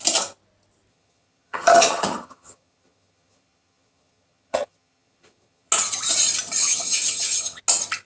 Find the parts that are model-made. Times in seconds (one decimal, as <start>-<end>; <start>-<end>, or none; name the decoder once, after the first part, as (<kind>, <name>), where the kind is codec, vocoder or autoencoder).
0.9-5.7 (vocoder, HiFi-GAN); 6.6-7.6